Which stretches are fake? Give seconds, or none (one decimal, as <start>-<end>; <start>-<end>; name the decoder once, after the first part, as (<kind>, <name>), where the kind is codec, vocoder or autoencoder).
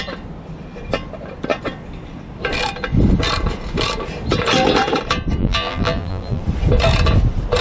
5.4-6.4 (vocoder, BigVGAN v2)